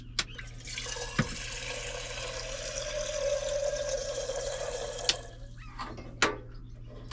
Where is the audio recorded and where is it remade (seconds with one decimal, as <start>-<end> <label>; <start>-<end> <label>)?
0.0-3.7 recorded; 3.7-5.0 remade; 5.0-7.1 recorded

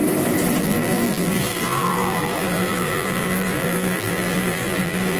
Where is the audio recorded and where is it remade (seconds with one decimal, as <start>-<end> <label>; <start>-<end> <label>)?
0.0-0.6 recorded; 0.6-5.2 remade

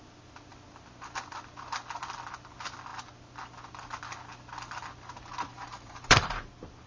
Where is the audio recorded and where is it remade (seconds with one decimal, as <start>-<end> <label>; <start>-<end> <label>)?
0.0-5.5 recorded; 5.5-6.3 remade; 6.3-6.9 recorded

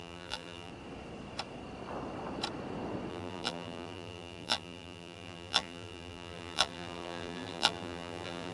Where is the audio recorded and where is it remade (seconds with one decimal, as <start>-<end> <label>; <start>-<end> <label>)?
0.0-0.7 remade; 0.7-3.1 recorded; 3.1-8.5 remade

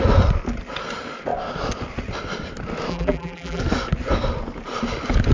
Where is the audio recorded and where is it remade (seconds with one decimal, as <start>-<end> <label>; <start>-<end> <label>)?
0.0-2.9 recorded; 2.9-3.6 remade; 3.6-5.3 recorded

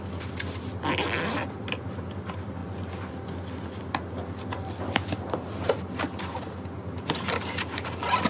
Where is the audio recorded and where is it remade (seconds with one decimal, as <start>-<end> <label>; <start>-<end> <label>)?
0.0-2.6 recorded; 2.6-3.1 remade; 3.1-8.3 recorded

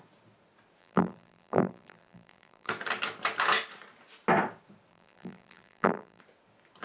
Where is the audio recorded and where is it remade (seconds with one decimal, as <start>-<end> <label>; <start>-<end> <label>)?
0.0-0.8 recorded; 0.8-2.7 remade; 2.7-4.9 recorded; 4.9-6.2 remade; 6.2-6.8 recorded

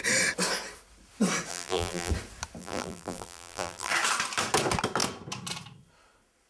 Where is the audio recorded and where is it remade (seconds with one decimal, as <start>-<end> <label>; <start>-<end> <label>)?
0.0-1.5 recorded; 1.5-2.1 remade; 2.1-2.6 recorded; 2.6-3.9 remade; 3.9-6.5 recorded